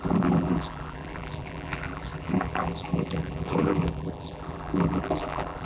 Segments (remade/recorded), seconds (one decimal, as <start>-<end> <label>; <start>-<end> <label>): 0.0-5.7 remade